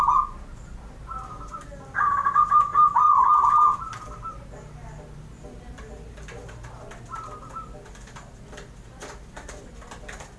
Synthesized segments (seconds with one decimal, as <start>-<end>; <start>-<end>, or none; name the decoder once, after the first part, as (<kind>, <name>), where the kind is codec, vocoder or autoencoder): none